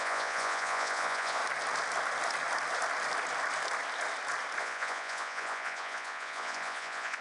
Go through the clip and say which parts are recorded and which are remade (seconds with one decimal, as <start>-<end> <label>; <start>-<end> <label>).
0.0-1.4 remade; 1.4-4.6 recorded; 4.6-7.2 remade